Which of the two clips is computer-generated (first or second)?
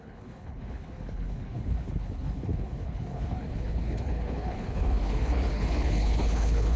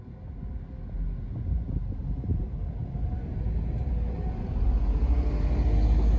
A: first